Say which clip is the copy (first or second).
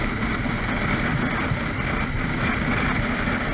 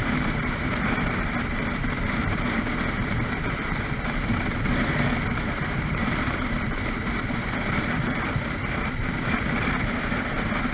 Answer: second